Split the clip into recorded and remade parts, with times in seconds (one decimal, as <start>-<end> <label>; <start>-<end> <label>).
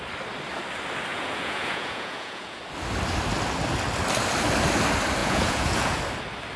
0.0-1.1 recorded; 1.1-2.6 remade; 2.6-5.2 recorded; 5.2-6.0 remade; 6.0-6.6 recorded